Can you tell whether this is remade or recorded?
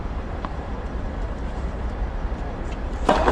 remade